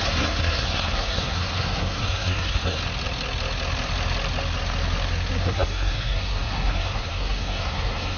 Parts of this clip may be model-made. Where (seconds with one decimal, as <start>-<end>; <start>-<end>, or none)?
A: 0.0-2.8; 5.4-8.2

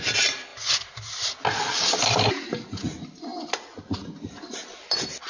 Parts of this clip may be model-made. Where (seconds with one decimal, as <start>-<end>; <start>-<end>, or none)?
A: none

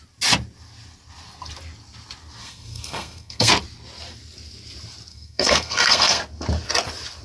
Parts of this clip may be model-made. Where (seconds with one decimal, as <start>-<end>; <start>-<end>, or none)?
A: 2.4-3.5; 5.1-6.2

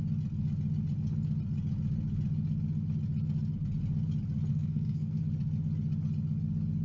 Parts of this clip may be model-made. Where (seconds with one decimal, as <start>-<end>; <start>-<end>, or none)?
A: 4.5-5.2